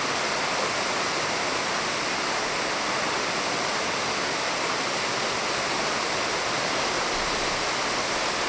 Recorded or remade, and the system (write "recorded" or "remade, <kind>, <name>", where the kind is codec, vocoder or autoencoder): recorded